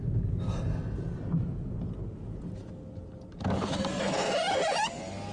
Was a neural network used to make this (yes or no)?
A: no